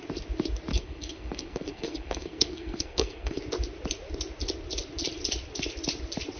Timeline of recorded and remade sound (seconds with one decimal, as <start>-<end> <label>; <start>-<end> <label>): 0.0-0.7 recorded; 0.7-3.4 remade; 3.4-6.4 recorded